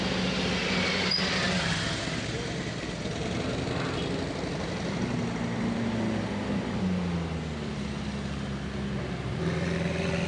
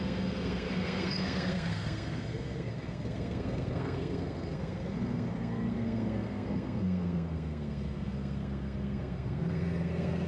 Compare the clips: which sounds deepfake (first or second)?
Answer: second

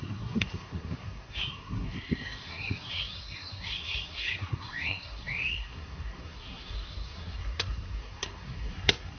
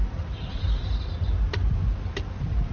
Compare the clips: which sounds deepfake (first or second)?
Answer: first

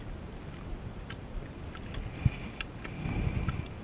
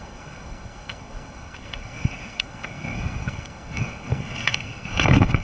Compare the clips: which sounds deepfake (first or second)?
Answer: second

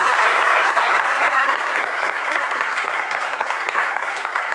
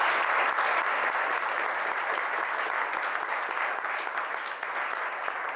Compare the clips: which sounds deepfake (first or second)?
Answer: first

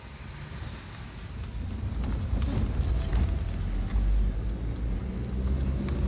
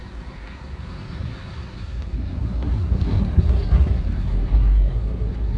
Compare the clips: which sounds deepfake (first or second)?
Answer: second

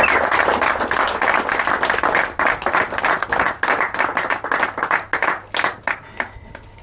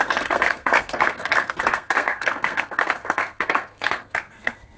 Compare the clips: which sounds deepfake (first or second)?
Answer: second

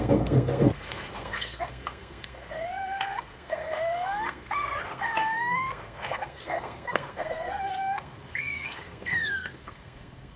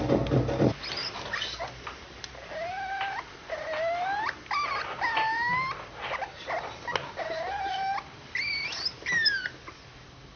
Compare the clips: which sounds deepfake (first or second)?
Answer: first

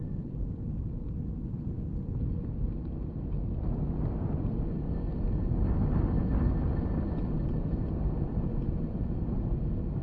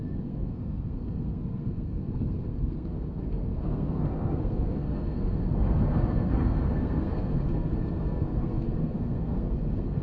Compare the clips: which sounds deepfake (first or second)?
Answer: second